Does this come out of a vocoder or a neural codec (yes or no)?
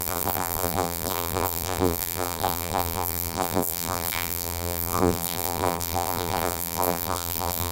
yes